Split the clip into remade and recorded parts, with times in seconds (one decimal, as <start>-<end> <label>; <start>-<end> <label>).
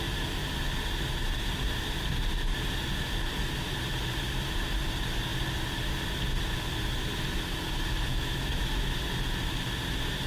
0.0-8.1 recorded; 8.1-9.0 remade; 9.0-10.3 recorded